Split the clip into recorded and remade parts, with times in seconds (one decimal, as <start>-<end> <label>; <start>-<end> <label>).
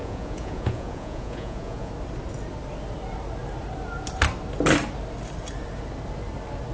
0.0-1.9 remade; 1.9-6.7 recorded